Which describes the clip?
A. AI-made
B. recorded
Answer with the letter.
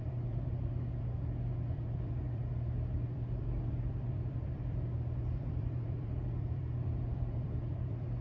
A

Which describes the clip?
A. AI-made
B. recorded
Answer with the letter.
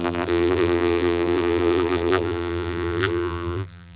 A